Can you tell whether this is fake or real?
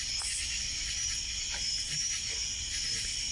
real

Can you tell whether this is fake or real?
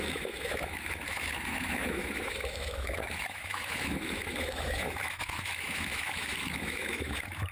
fake